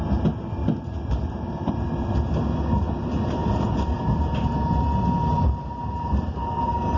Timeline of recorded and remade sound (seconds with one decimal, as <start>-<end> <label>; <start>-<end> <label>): 0.0-0.6 recorded; 0.6-1.7 remade; 1.7-7.0 recorded